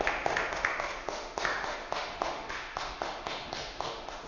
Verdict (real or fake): fake